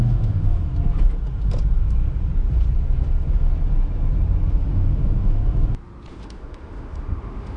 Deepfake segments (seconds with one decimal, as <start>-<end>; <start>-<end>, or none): 0.0-0.7; 4.5-5.4; 6.1-7.6